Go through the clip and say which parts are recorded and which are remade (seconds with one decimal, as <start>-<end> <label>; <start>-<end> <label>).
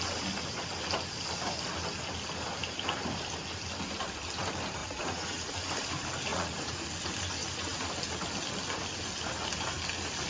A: 0.0-4.8 recorded; 4.8-5.5 remade; 5.5-6.3 recorded; 6.3-6.9 remade; 6.9-7.4 recorded; 7.4-7.9 remade; 7.9-10.3 recorded